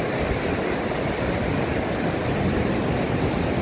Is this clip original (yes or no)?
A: yes